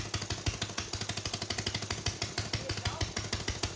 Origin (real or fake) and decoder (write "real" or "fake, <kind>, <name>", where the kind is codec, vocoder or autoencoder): real